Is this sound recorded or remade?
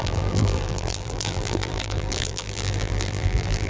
remade